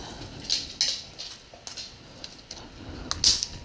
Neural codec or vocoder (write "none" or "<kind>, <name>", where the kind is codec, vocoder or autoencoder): none